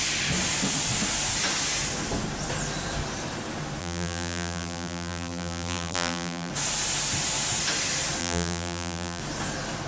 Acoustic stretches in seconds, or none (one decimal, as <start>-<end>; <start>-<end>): 0.0-3.8; 6.5-8.2; 9.2-9.9